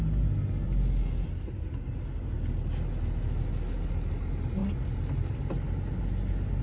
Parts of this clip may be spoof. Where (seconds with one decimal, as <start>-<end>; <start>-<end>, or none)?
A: none